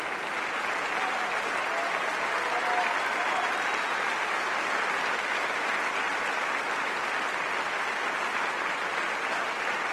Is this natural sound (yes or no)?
yes